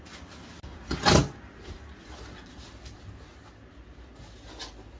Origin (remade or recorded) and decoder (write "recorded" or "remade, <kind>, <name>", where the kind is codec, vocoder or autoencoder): recorded